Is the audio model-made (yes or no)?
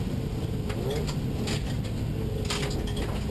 no